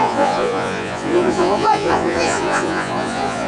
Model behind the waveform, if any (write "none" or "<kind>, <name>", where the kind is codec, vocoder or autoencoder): vocoder, Vocos